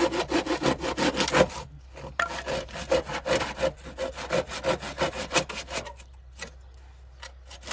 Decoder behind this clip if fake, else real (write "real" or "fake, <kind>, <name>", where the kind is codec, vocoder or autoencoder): real